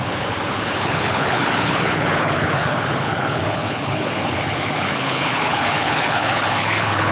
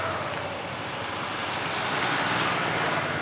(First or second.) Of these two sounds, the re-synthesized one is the first